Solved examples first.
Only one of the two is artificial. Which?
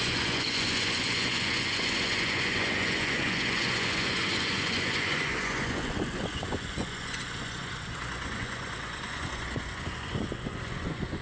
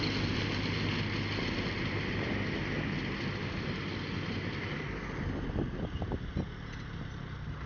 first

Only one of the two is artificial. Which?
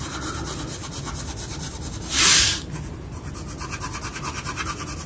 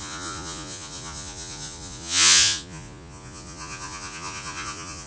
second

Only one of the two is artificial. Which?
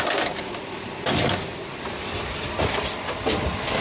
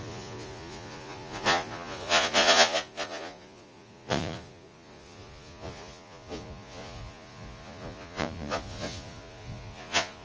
second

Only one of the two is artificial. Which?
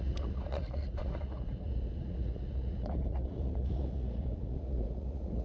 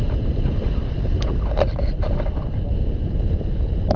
first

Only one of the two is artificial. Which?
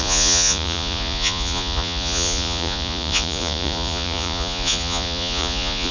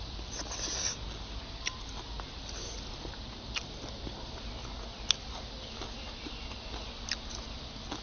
first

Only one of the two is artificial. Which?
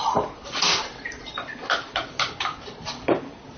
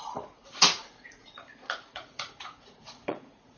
second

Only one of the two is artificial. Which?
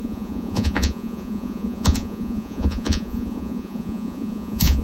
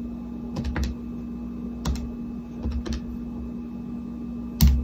first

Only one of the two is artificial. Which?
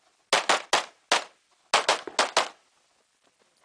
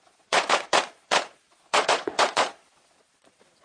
second